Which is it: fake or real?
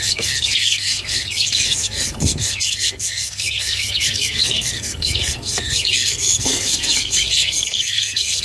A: fake